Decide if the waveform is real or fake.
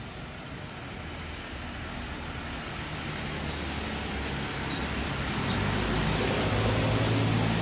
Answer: real